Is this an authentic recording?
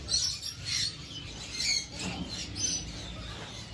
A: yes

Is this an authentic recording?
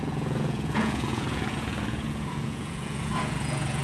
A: no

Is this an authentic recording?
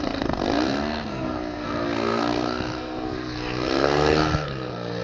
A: no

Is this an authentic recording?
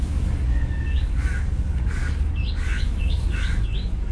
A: no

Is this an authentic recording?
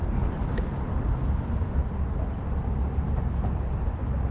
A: yes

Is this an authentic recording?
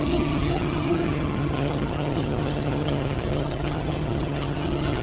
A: no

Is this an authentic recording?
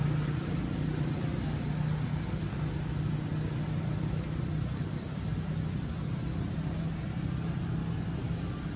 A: yes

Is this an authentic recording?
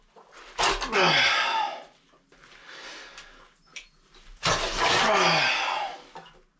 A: yes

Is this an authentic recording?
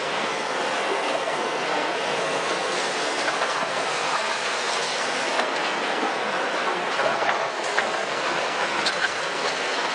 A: no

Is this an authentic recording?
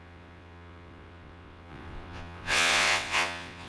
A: no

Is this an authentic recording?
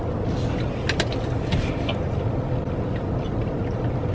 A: yes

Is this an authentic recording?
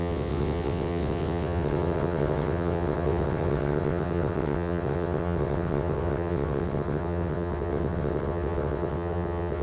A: no